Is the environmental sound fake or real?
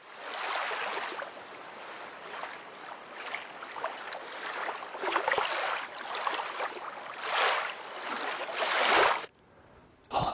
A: real